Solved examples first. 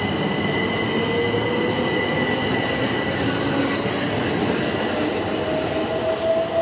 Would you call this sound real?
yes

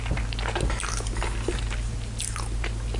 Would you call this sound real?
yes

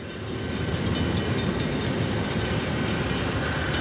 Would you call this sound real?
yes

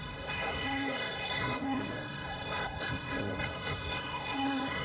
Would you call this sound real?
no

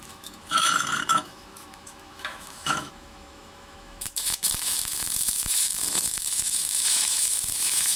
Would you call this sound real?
no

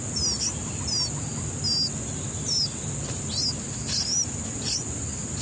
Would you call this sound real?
yes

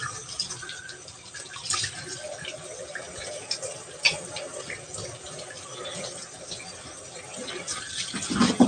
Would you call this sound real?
yes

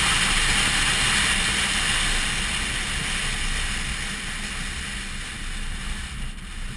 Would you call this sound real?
yes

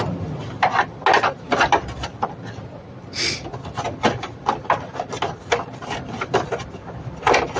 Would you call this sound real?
yes